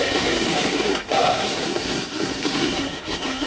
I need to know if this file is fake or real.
fake